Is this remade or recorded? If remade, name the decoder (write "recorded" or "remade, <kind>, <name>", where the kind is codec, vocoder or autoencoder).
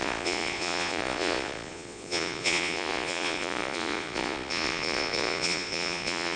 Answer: remade, vocoder, Vocos